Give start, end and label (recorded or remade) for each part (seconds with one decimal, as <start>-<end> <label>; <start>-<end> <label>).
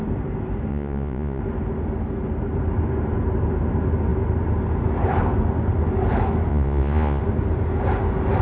0.0-0.7 recorded; 0.7-1.4 remade; 1.4-6.5 recorded; 6.5-7.2 remade; 7.2-8.4 recorded